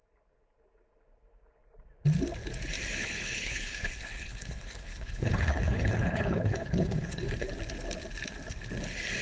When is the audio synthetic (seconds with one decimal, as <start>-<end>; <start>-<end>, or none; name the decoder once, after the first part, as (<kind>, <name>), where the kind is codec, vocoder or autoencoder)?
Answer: 3.0-7.5 (codec, HILCodec)